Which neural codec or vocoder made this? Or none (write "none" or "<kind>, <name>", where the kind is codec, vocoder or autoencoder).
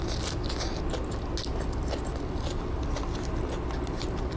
none